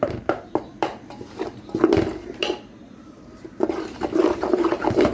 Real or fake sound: fake